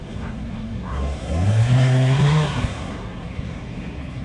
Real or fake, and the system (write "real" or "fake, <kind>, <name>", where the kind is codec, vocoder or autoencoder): fake, codec, SNAC